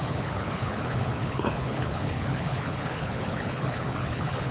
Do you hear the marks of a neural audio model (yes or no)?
yes